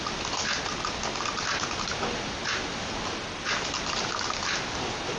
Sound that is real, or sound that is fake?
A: real